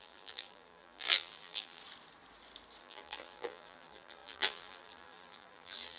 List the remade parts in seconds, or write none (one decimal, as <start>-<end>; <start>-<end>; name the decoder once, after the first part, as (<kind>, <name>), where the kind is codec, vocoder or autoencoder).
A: 0.0-1.8 (vocoder, BigVGAN v2); 2.8-6.0